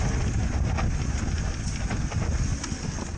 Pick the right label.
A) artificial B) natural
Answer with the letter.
B